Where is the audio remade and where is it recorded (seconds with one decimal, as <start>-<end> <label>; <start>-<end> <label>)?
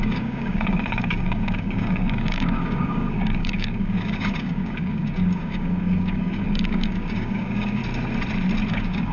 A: 0.0-7.8 remade; 7.8-8.7 recorded; 8.7-9.1 remade